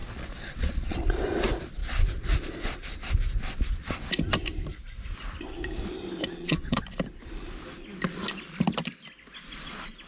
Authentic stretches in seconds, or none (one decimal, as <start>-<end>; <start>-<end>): 1.2-6.2; 6.8-10.1